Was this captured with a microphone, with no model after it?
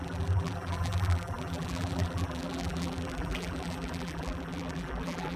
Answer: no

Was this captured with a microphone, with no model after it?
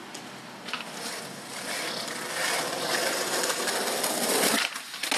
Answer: yes